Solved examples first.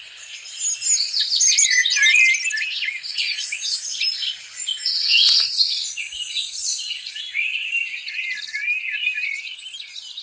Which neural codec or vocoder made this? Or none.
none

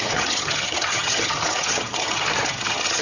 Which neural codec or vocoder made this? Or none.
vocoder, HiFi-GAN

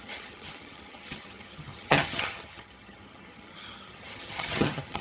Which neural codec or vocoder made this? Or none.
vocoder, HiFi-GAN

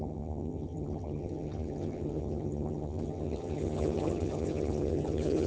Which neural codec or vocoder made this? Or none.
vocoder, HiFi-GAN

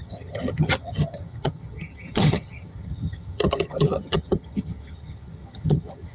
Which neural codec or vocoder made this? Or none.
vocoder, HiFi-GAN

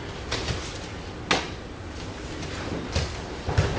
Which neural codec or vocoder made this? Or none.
none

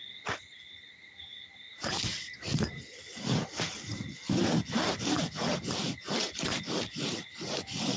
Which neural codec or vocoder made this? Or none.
none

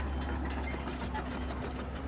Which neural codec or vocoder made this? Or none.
none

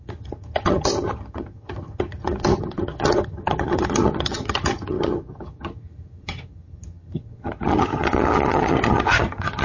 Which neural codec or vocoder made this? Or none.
vocoder, HiFi-GAN